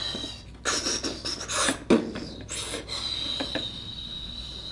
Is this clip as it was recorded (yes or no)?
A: yes